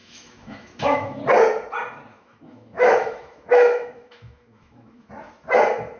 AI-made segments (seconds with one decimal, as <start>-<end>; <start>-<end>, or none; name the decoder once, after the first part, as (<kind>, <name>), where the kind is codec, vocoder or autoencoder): 0.0-1.2 (autoencoder, DAC-VAE); 2.1-5.1